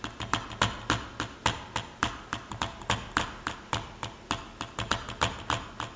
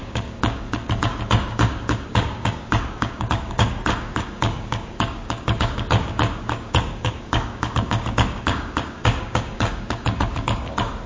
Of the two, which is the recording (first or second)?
first